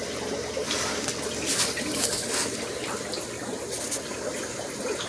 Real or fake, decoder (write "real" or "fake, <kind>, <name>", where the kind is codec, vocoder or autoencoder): real